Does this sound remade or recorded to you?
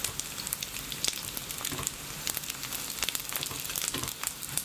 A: recorded